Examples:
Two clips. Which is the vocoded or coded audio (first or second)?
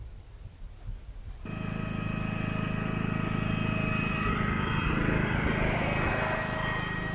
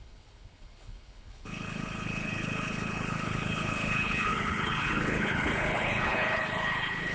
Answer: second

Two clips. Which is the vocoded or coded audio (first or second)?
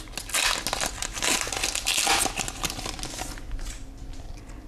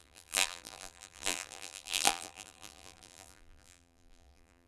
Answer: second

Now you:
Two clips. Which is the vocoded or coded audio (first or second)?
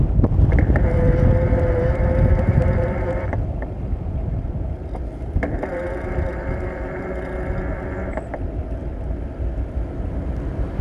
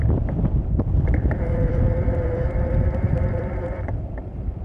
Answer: second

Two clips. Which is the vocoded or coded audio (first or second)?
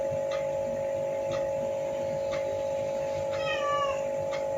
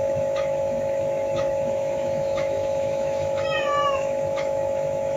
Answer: second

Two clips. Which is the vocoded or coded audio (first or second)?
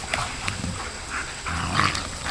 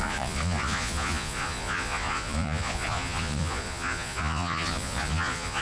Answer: second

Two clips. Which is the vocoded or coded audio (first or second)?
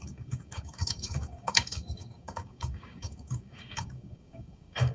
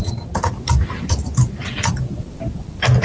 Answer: first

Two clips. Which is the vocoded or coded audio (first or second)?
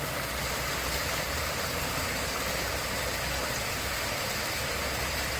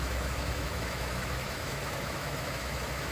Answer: second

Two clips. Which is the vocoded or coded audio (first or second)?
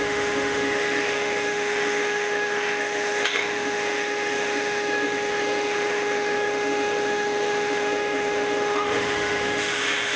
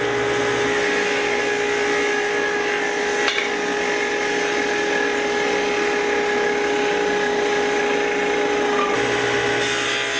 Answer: first